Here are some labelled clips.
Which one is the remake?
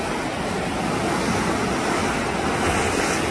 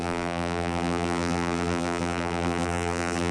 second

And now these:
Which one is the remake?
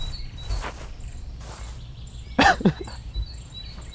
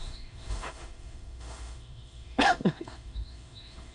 second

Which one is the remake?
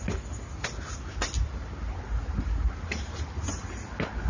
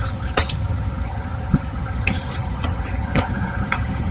second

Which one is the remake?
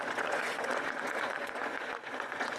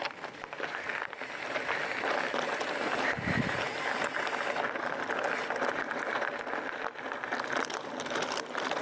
first